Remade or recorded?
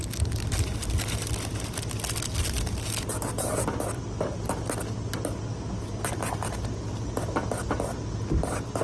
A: recorded